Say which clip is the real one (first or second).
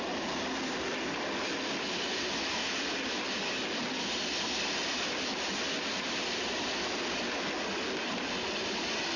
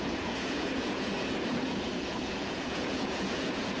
first